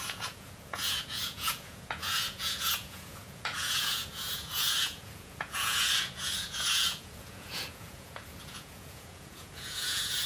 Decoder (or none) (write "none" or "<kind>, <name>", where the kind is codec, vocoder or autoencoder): vocoder, Vocos